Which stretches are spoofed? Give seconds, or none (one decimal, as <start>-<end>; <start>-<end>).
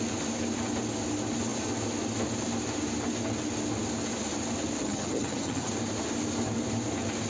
4.8-5.7